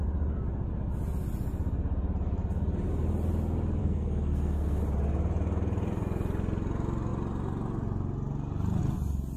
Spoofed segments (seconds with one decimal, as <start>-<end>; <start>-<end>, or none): 3.8-4.8